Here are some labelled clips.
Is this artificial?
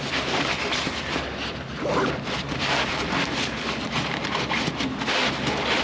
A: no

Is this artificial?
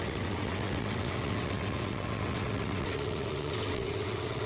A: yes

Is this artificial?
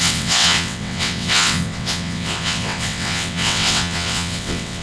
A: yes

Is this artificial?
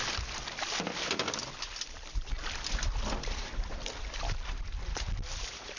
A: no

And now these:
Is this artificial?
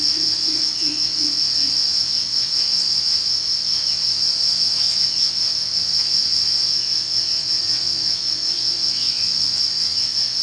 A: yes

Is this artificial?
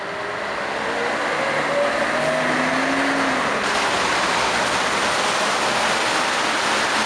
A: no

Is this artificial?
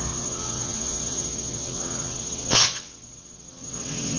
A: yes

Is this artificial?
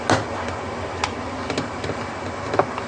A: no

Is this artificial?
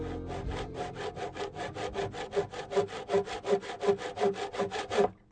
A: no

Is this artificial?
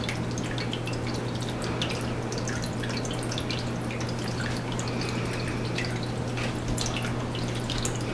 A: no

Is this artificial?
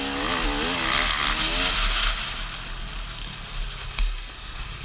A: no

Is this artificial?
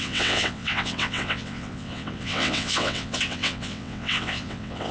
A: yes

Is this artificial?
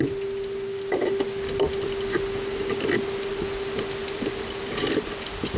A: no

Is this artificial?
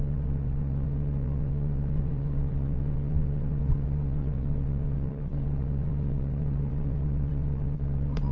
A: yes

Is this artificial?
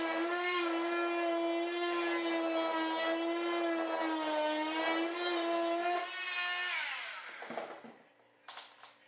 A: no